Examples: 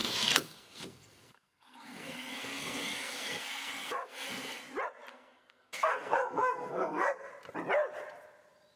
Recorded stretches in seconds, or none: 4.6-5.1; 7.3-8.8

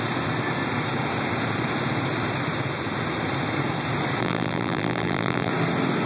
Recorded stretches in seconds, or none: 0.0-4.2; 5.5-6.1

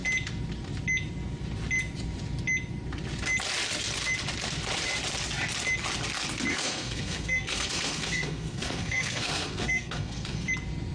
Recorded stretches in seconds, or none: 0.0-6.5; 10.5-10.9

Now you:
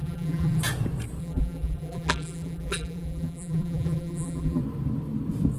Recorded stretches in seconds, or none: 0.6-1.2; 4.6-5.6

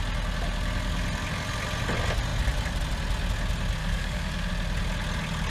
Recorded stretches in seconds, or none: 0.0-3.8; 4.5-5.5

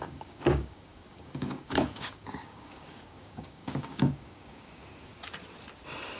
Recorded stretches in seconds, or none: 5.1-6.2

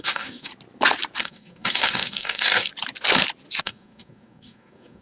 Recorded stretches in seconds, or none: 0.5-1.2; 2.7-3.6